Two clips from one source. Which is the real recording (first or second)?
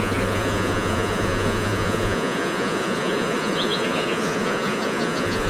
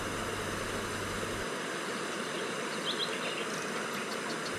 second